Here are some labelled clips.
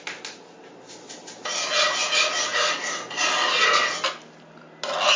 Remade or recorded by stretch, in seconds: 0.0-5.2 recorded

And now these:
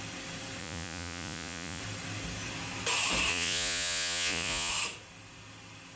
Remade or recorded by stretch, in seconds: 0.0-0.6 recorded; 0.6-1.8 remade; 1.8-3.3 recorded; 3.3-4.7 remade; 4.7-6.0 recorded

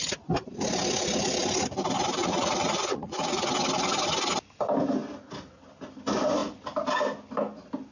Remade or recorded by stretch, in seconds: 0.0-2.2 recorded; 2.2-3.5 remade; 3.5-7.9 recorded

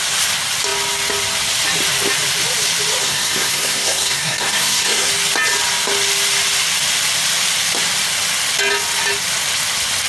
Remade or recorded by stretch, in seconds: 0.0-3.0 recorded; 3.0-5.1 remade; 5.1-10.1 recorded

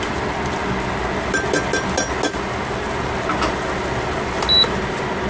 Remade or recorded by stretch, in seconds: 0.0-5.3 recorded

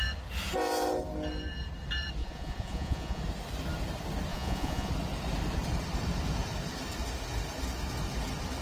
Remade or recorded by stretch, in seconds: 0.0-2.2 recorded; 2.2-3.2 remade; 3.2-4.3 recorded; 4.3-4.9 remade; 4.9-8.6 recorded

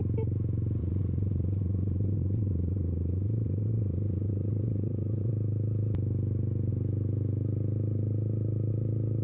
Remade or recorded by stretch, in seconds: 0.0-0.8 recorded; 0.8-5.3 remade; 5.3-9.2 recorded

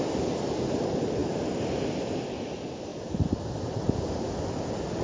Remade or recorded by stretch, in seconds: 0.0-5.0 recorded